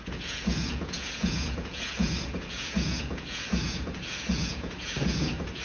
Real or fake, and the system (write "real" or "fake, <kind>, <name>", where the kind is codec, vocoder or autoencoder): fake, vocoder, Vocos